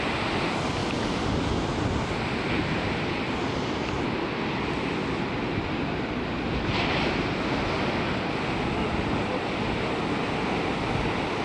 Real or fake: real